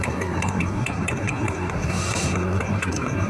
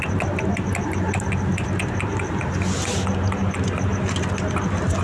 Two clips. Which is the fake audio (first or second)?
first